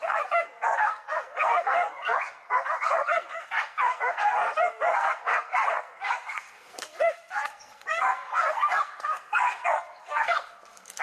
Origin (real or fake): fake